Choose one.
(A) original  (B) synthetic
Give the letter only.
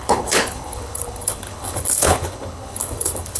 B